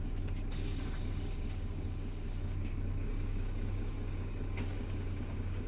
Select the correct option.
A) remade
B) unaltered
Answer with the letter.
A